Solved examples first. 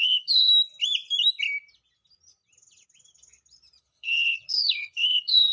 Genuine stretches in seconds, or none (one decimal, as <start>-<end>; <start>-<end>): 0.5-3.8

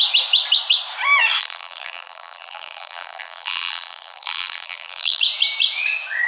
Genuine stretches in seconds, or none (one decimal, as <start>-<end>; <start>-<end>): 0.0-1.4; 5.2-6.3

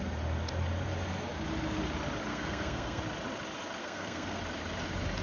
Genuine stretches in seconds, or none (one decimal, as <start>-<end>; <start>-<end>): 0.0-2.3; 3.0-3.8; 4.4-5.2

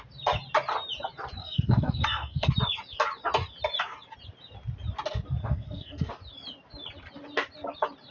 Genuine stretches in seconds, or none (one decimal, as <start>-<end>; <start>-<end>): 0.0-1.4; 2.5-5.4; 6.1-8.1

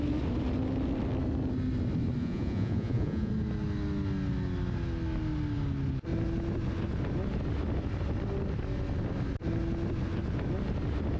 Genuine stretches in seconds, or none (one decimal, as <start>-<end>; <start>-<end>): 0.0-2.2; 3.3-11.2

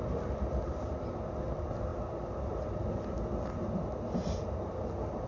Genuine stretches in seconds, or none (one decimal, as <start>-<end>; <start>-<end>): 0.0-5.3

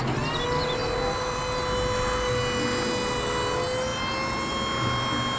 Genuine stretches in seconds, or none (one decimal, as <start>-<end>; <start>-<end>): 0.0-0.8; 1.4-5.4

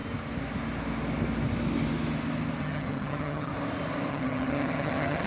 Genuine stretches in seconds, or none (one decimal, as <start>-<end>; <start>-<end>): 0.0-2.6; 3.5-4.1